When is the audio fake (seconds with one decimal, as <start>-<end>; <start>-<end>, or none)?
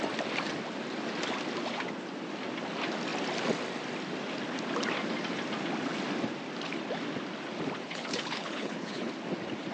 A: 7.8-9.1